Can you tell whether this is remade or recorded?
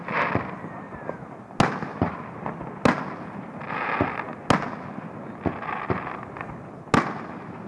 recorded